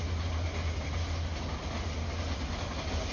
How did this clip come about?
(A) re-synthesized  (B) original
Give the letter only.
B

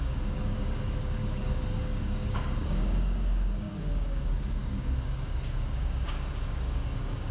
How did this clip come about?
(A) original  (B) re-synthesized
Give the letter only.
B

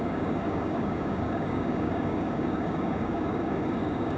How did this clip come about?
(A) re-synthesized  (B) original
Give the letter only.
A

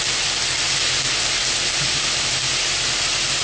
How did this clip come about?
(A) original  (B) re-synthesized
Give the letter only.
A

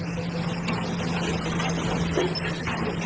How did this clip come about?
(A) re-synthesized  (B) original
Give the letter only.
B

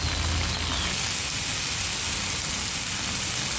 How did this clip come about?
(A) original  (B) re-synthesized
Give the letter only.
A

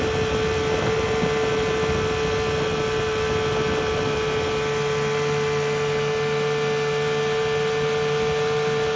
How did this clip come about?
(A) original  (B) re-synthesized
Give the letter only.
A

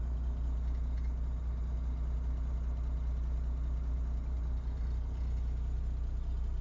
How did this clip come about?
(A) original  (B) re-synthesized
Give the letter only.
A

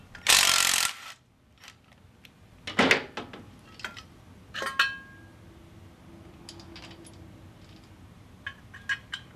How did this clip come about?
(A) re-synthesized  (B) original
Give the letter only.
B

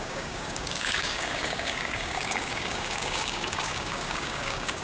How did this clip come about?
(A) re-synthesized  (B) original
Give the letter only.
A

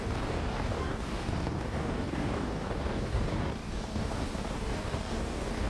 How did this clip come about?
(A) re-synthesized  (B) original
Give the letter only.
A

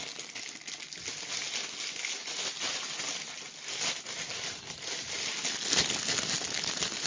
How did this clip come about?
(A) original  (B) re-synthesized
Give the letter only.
A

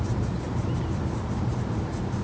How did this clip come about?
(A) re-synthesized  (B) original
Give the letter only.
B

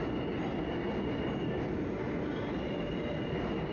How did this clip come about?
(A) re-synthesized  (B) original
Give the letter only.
B